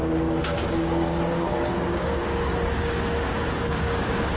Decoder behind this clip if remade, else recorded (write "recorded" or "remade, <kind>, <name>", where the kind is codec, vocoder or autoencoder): remade, codec, DAC